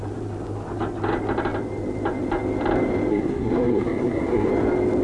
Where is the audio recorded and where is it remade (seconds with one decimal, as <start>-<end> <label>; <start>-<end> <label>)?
0.0-3.1 recorded; 3.1-4.5 remade; 4.5-5.0 recorded